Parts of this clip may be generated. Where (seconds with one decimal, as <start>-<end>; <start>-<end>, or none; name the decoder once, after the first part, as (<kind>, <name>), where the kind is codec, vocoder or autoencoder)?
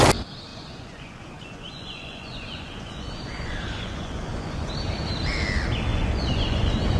0.5-4.7 (vocoder, Vocos); 5.9-7.0